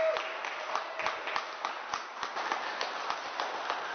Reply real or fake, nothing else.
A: real